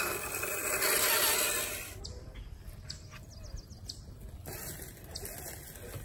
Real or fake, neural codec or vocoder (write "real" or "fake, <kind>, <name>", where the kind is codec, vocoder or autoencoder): real